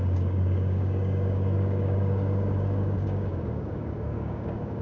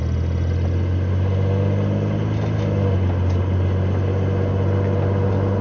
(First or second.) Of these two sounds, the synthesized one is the first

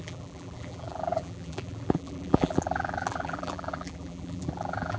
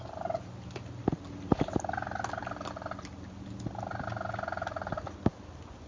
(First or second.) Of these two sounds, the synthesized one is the first